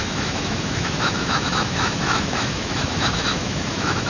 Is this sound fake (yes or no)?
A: yes